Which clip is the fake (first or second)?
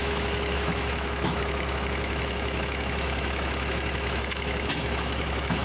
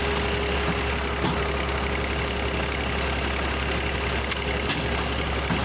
first